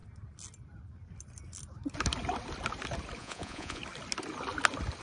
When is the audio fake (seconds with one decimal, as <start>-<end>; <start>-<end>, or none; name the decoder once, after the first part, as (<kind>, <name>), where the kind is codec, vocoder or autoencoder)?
3.2-3.8 (vocoder, Vocos)